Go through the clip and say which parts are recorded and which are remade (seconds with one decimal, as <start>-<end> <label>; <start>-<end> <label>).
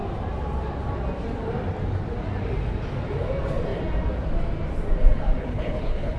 0.0-5.4 recorded; 5.4-6.2 remade